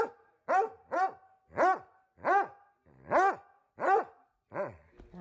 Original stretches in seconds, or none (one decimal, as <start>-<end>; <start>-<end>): 0.0-5.2